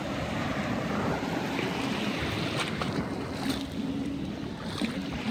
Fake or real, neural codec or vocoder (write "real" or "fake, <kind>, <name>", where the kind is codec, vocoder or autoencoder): real